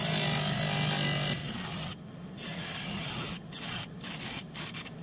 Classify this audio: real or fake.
real